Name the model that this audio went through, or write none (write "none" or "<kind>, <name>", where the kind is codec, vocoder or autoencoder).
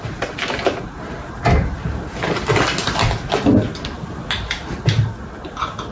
none